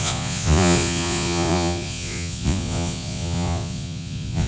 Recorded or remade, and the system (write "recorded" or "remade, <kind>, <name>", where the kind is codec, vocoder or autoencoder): remade, vocoder, Vocos